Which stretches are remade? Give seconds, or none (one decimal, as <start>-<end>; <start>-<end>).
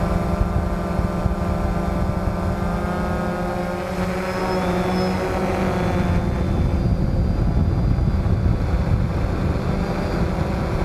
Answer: none